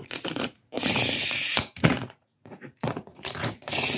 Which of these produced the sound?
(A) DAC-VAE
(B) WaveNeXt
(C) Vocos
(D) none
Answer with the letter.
C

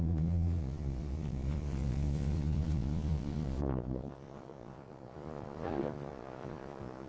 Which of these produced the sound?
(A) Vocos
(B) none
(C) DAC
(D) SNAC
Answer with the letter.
A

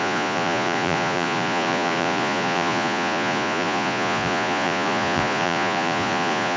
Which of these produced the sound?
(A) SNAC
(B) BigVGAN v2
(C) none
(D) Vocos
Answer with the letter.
D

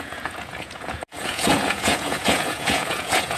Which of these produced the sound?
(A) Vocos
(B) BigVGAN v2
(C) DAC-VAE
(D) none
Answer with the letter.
A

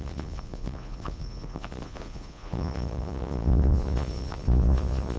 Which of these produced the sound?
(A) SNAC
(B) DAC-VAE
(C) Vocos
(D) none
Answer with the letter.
C